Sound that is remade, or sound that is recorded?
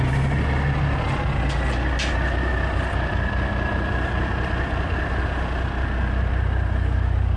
recorded